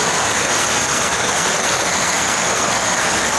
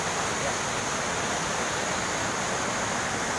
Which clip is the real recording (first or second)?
second